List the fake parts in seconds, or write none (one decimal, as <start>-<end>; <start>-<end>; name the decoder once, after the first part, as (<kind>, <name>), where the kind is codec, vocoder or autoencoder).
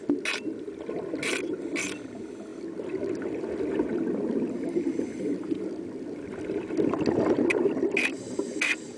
none